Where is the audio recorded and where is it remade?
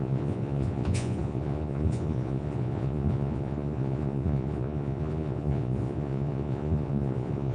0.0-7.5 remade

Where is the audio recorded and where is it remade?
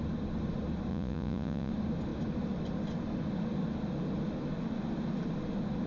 0.0-0.9 recorded; 0.9-1.7 remade; 1.7-5.9 recorded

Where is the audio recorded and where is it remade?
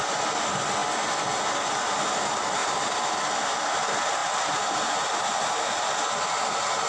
0.0-6.9 recorded